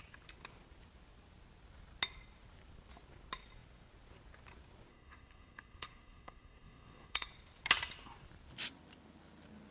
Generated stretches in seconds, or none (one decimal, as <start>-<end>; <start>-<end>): 4.9-7.3